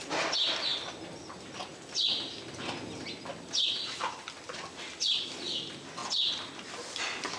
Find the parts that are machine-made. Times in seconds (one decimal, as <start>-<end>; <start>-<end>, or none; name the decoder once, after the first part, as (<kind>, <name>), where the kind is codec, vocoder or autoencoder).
none